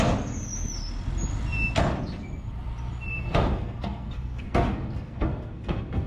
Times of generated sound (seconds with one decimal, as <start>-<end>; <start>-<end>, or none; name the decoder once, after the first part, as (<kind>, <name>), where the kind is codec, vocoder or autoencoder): 3.1-6.1 (codec, SNAC)